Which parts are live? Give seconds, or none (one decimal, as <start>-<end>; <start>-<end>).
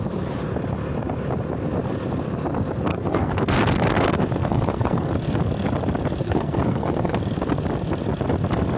0.0-2.9; 3.4-4.4; 5.1-6.2; 7.2-8.8